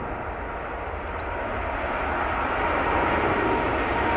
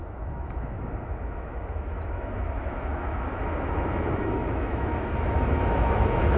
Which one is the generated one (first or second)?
second